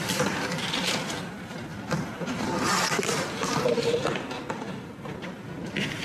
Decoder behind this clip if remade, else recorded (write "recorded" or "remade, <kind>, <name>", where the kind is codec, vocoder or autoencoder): recorded